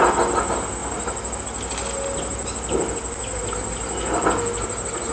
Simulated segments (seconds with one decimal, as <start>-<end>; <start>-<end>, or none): none